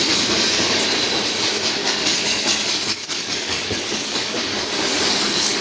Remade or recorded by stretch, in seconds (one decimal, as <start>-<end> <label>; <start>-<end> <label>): 0.0-1.8 recorded; 1.8-5.6 remade